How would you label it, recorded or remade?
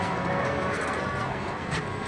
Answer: remade